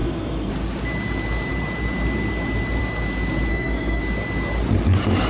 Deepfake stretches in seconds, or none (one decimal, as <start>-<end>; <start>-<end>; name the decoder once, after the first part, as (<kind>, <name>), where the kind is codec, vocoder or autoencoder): 0.0-0.5 (codec, SNAC); 3.5-4.0